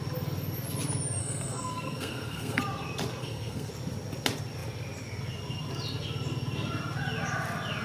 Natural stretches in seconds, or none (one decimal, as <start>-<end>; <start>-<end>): 0.0-1.2; 2.6-3.2; 3.7-7.8